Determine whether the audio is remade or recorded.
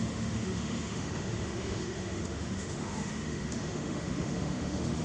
remade